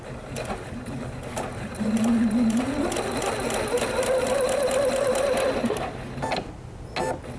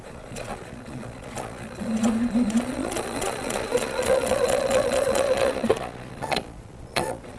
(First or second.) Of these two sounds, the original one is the first